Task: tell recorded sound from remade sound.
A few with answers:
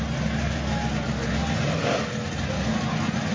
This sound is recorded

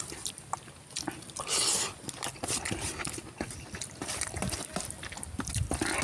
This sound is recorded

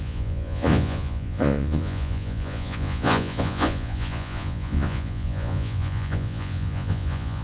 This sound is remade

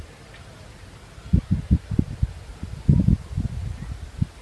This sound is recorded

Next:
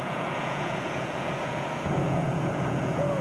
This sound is remade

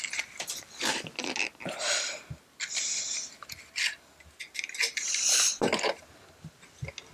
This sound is recorded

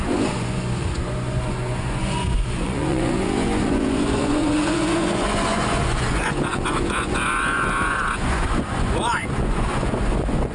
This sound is remade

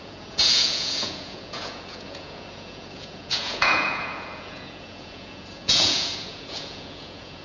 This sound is remade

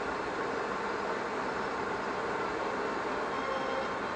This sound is recorded